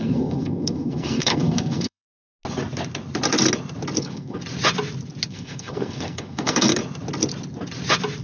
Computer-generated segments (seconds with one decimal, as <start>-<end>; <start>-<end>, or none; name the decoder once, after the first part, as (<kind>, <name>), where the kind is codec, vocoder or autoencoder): 0.0-2.2 (codec, SNAC); 4.0-4.4; 5.3-6.8